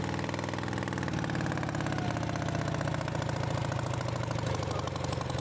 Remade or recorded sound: recorded